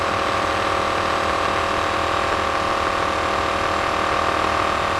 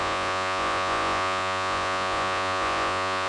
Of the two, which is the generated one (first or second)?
second